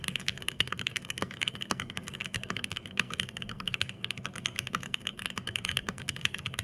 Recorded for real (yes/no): no